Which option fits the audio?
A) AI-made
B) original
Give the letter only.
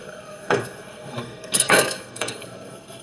A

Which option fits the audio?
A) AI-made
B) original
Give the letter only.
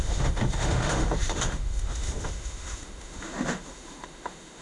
A